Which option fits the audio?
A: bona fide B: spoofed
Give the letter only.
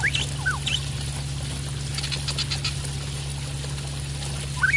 A